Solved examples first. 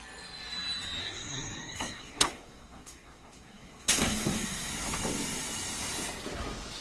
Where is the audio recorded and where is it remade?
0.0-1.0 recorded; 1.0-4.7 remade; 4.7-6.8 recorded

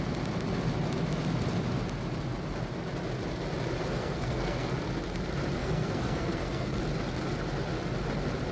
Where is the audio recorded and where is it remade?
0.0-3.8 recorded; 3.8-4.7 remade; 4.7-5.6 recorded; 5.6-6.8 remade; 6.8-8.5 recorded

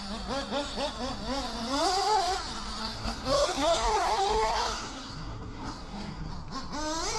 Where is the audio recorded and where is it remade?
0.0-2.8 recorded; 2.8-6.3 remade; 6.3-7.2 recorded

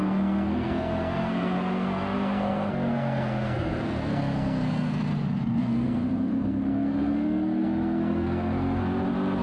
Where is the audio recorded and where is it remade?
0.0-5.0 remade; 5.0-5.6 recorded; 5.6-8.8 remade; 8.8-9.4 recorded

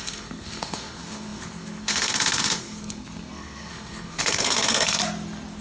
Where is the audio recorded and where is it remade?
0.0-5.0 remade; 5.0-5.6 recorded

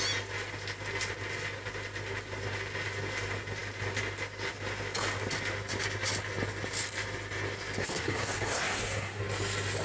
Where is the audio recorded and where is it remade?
0.0-7.8 recorded; 7.8-9.2 remade; 9.2-9.8 recorded

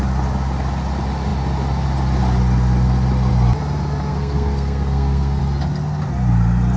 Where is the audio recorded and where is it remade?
0.0-4.1 recorded; 4.1-5.4 remade; 5.4-6.8 recorded

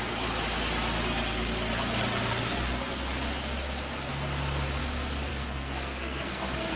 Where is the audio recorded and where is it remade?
0.0-5.3 recorded; 5.3-6.8 remade